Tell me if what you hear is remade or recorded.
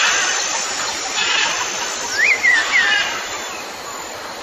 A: recorded